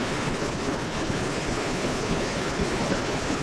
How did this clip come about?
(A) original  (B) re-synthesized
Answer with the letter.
B